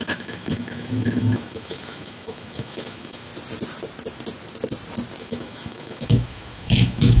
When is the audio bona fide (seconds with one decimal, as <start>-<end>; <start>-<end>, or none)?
3.3-5.2